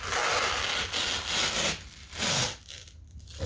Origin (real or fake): real